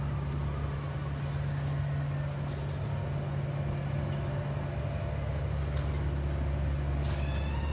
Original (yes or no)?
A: yes